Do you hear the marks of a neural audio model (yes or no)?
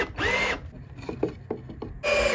no